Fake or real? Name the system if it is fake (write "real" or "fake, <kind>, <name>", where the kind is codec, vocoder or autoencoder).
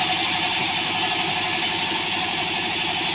real